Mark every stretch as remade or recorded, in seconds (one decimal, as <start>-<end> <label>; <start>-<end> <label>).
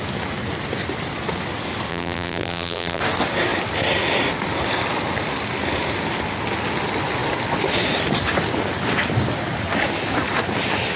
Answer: 0.0-1.9 recorded; 1.9-3.0 remade; 3.0-11.0 recorded